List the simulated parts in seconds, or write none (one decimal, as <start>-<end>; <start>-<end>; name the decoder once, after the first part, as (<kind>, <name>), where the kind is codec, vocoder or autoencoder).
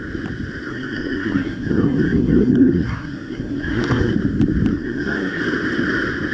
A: 0.7-4.1 (codec, SNAC); 4.7-5.4